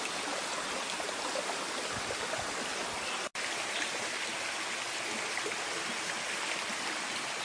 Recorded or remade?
recorded